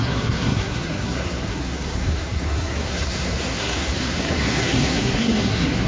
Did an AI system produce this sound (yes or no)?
yes